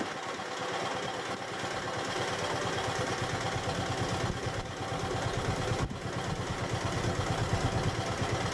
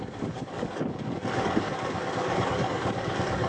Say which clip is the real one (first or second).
first